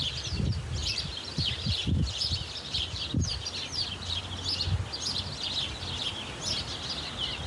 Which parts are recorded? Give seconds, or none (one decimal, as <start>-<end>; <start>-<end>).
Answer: 0.0-0.8; 4.2-7.5